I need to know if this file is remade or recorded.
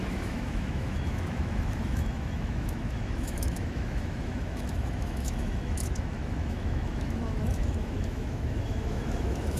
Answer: remade